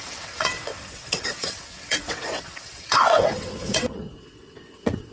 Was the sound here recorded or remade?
remade